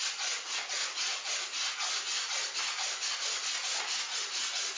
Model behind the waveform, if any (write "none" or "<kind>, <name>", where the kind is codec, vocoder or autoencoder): none